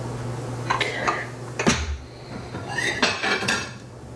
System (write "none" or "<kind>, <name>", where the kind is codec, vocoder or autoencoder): none